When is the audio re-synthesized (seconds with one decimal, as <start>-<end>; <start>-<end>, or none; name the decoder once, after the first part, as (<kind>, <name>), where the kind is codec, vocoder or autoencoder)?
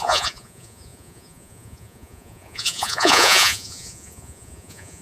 0.0-5.0 (vocoder, Vocos)